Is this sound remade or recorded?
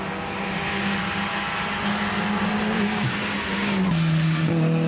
recorded